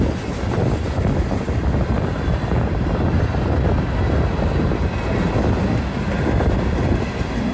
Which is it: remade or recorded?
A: recorded